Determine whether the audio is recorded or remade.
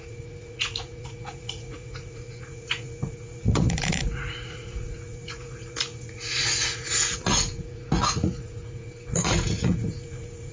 remade